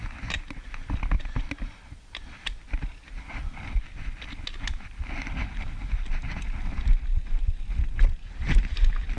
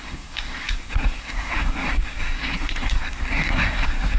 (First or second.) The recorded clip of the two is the first